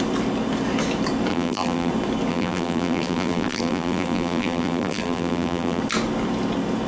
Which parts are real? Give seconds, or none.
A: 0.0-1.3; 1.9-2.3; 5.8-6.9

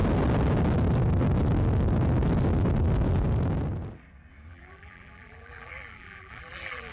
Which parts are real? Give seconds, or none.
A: 0.0-4.5

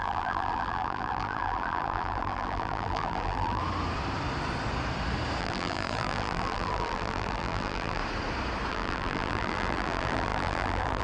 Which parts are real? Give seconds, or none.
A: 3.6-5.4; 8.0-8.7

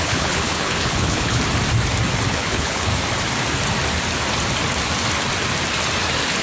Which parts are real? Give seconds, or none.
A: 1.4-2.3; 2.9-6.4

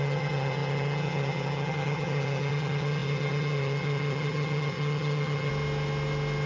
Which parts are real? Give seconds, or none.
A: 5.5-6.5

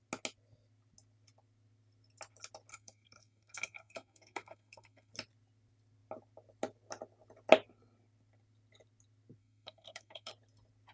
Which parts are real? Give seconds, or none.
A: 0.0-2.7; 5.1-9.4; 10.3-10.9